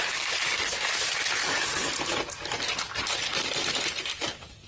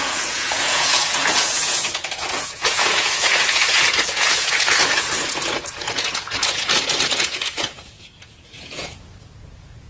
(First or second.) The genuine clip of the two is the first